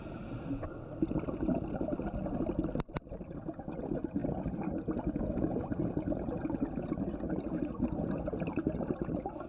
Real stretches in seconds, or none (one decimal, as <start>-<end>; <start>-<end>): 0.0-9.5